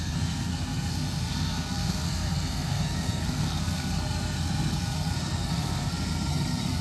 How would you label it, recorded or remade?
remade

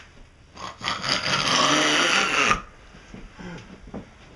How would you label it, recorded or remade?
recorded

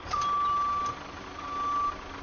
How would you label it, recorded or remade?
recorded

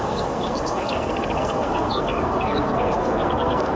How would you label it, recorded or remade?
remade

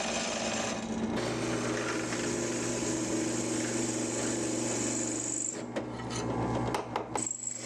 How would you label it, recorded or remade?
recorded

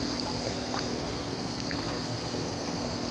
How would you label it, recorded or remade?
remade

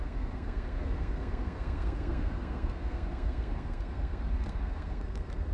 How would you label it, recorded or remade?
remade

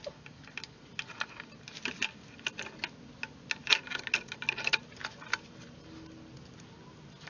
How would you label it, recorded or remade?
recorded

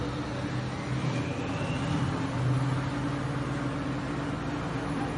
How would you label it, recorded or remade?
recorded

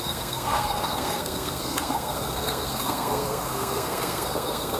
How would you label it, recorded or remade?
remade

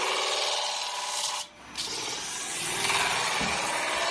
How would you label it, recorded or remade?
recorded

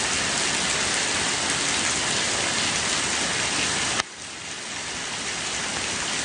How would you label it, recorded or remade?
recorded